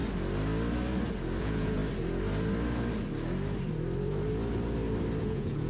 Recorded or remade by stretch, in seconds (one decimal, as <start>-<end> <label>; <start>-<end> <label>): 0.0-1.4 recorded; 1.4-1.8 remade; 1.8-5.2 recorded; 5.2-5.7 remade